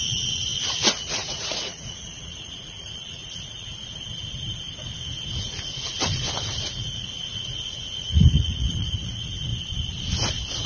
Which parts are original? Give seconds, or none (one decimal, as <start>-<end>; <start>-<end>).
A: 3.7-6.6; 9.5-10.7